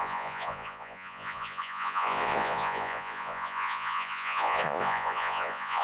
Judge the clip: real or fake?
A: fake